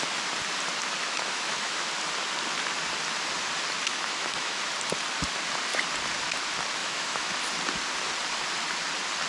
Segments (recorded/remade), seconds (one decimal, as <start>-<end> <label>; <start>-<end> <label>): 0.0-1.0 recorded; 1.0-1.9 remade; 1.9-3.9 recorded; 3.9-4.6 remade; 4.6-6.8 recorded; 6.8-7.4 remade; 7.4-9.3 recorded